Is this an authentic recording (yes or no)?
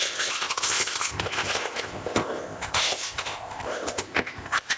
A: no